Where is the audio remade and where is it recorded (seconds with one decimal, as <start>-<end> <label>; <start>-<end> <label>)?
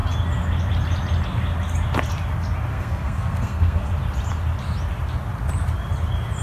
0.0-2.7 recorded; 2.7-3.9 remade; 3.9-6.4 recorded